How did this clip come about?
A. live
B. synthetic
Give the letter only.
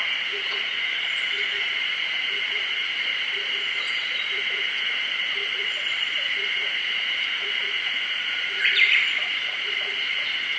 B